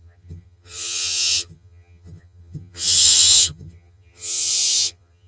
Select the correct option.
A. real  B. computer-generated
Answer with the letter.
B